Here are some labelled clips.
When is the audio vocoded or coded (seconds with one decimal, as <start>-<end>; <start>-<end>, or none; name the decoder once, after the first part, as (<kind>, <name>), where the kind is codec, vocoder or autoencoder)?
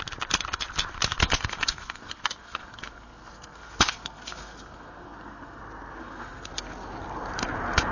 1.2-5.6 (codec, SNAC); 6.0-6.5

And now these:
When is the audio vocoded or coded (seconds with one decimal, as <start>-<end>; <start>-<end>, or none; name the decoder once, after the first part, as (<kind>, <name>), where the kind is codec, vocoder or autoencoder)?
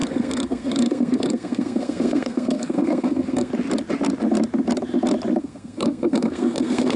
0.0-3.5 (codec, SNAC); 5.4-7.0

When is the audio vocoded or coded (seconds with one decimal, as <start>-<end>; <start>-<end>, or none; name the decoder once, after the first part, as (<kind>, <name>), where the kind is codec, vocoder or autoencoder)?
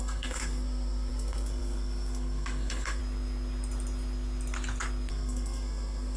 0.0-3.0 (codec, SNAC); 5.1-6.2